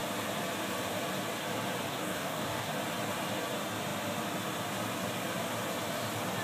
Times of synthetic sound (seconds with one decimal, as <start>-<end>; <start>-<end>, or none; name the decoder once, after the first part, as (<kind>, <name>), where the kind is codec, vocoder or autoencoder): 1.9-2.7 (codec, DAC)